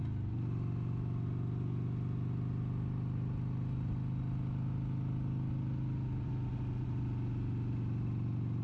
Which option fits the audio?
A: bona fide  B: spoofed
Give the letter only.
A